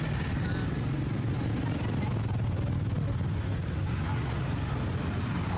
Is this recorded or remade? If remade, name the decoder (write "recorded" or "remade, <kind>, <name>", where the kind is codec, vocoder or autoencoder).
recorded